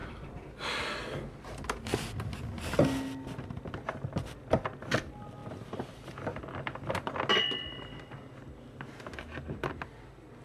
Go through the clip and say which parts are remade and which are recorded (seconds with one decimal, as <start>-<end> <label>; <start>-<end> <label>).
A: 0.0-10.4 recorded